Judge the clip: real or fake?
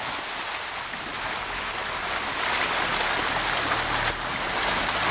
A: real